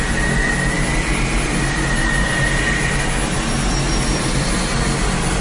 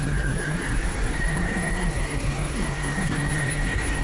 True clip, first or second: first